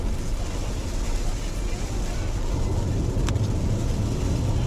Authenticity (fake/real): real